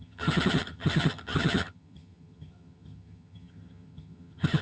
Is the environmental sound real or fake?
fake